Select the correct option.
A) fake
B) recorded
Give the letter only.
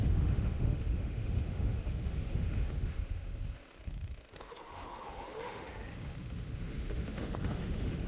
A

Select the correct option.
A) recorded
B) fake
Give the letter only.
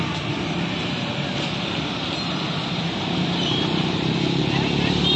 A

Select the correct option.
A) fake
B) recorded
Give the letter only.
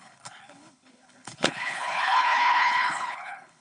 A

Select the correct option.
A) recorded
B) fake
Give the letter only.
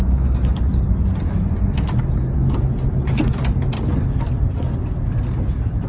A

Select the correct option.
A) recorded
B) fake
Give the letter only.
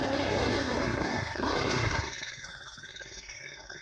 B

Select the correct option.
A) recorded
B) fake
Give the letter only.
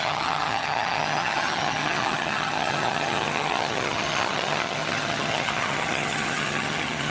B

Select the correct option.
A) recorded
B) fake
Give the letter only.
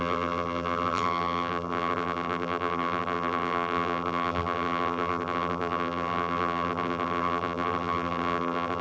B